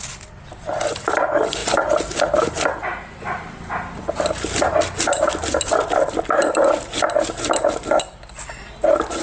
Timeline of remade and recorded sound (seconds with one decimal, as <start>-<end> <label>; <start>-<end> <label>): 0.0-9.2 recorded